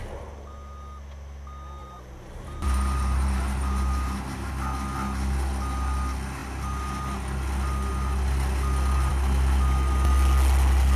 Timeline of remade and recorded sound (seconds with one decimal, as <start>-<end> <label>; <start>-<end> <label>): 0.0-1.8 recorded; 1.8-4.5 remade; 4.5-11.0 recorded